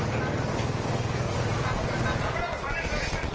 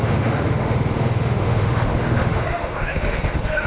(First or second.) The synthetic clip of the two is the second